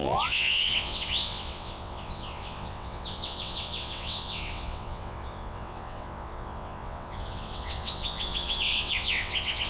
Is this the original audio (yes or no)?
no